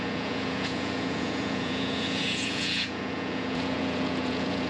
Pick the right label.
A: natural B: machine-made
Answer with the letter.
B